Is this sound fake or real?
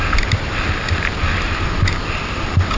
real